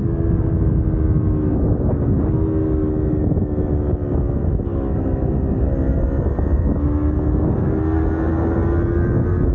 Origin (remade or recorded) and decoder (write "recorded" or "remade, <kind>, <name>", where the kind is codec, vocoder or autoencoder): recorded